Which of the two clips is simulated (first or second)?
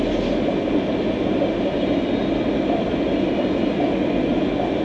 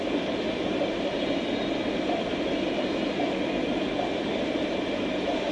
second